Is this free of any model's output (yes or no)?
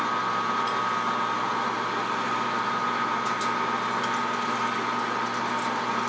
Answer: yes